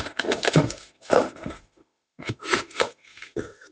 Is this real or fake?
fake